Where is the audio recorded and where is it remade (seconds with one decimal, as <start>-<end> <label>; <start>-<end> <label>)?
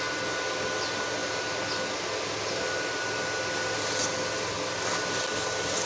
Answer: 0.0-5.9 recorded